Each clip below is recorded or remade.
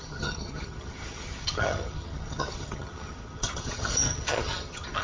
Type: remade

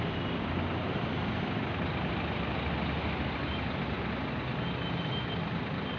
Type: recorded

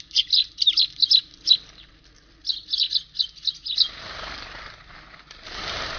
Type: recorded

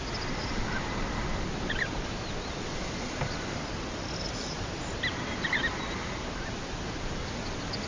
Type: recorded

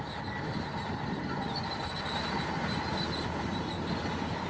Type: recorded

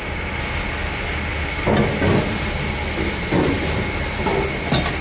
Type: recorded